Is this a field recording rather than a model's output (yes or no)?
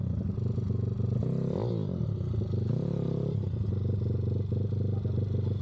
yes